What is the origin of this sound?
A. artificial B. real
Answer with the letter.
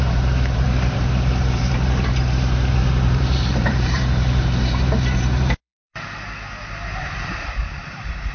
A